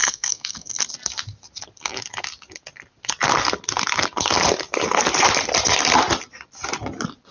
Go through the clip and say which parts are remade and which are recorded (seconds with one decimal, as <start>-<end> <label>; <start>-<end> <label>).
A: 0.0-0.8 remade; 0.8-7.3 recorded